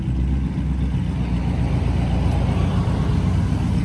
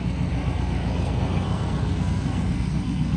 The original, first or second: first